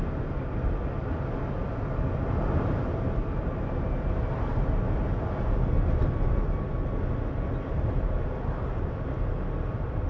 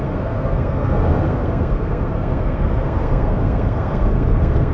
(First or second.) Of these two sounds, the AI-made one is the second